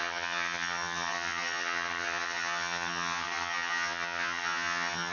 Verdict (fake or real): fake